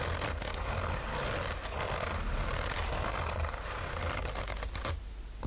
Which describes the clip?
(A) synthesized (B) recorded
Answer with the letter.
B